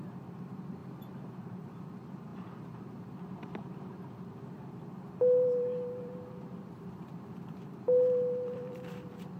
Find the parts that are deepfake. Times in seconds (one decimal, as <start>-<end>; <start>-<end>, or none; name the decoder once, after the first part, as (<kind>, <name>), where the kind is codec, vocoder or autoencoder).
0.0-0.8 (vocoder, BigVGAN v2); 1.3-9.4